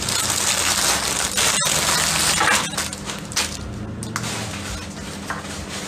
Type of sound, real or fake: real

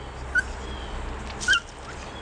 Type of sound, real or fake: real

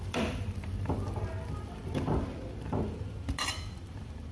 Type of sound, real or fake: fake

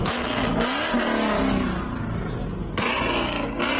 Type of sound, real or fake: real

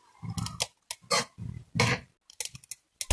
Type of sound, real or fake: real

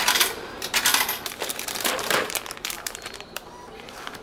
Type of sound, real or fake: fake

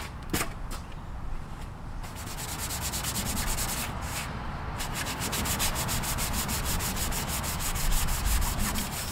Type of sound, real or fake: real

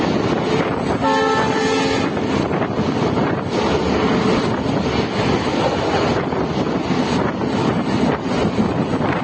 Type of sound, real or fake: real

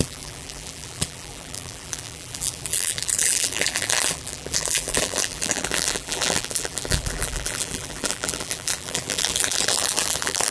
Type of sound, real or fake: fake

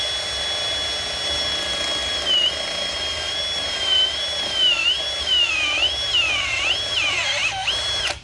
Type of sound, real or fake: real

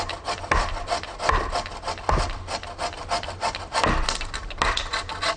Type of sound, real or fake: real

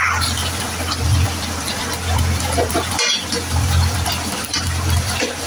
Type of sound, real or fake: real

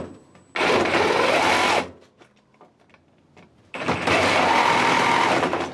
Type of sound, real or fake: real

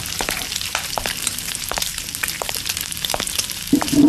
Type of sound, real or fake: fake